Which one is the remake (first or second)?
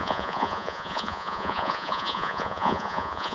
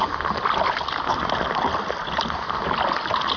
first